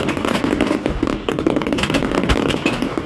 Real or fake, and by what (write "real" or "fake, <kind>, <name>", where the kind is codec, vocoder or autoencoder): fake, codec, DAC